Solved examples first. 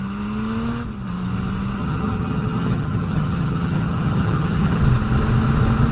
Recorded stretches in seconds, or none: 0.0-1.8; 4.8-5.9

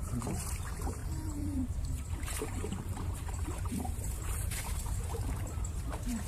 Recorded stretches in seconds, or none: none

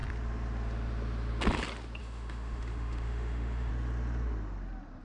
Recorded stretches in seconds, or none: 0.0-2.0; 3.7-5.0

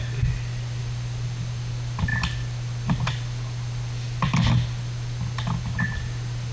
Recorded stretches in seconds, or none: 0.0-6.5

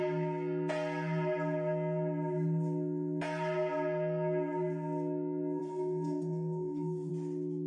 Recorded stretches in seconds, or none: 0.0-5.6; 7.1-7.7

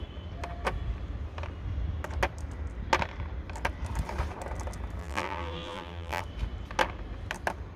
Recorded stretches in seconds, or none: 0.0-5.0; 6.2-7.8

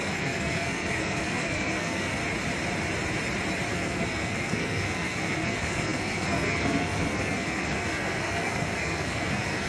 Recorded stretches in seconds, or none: 2.2-3.7

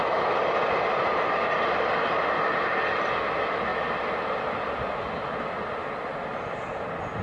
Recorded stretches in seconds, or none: 0.0-7.2